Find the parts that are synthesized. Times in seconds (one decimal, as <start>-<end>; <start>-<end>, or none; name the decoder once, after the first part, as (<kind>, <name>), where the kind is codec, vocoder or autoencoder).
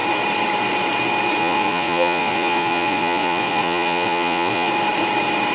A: 1.4-4.7 (vocoder, Vocos)